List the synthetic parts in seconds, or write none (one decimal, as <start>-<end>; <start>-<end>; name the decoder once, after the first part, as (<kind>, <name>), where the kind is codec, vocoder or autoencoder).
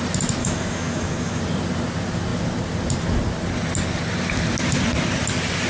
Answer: 0.4-1.4 (autoencoder, DAC-VAE)